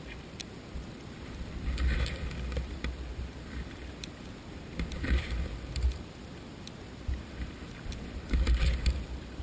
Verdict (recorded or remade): remade